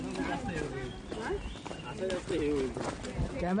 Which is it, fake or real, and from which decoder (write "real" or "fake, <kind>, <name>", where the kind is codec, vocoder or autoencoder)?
real